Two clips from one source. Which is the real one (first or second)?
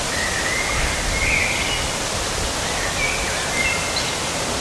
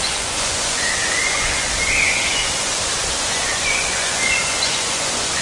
first